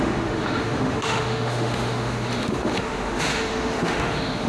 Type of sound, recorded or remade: remade